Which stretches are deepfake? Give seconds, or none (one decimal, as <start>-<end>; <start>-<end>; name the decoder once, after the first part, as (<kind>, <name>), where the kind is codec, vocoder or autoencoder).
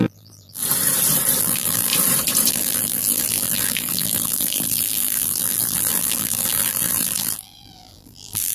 0.0-0.6 (vocoder, BigVGAN v2); 1.4-1.9; 2.5-8.5